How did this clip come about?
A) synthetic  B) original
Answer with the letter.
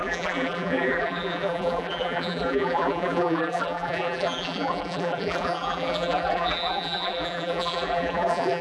A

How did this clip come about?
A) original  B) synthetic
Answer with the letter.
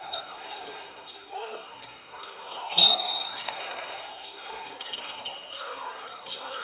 B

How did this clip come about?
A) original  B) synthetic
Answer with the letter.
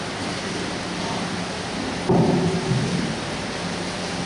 A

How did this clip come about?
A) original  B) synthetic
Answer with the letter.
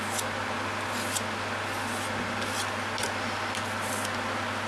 A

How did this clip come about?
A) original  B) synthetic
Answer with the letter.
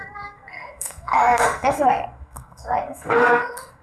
B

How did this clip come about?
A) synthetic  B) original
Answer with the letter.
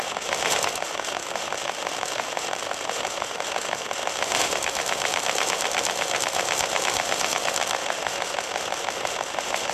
A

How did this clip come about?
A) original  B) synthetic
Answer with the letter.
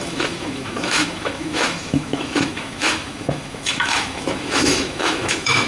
B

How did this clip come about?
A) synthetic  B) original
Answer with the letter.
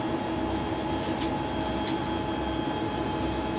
B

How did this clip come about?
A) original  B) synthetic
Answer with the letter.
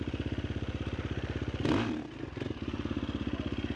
A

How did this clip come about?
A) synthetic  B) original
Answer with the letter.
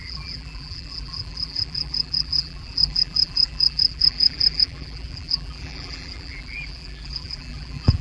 A